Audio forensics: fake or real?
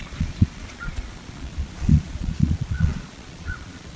fake